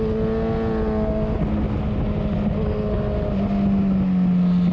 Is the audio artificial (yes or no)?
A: no